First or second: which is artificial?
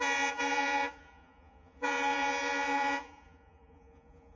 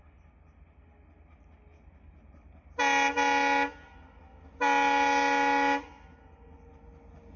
first